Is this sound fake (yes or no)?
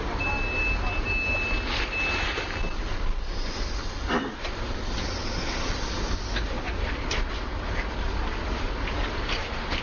no